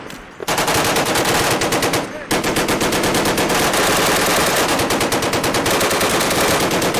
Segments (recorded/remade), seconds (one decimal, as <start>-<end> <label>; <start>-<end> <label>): 0.0-7.0 recorded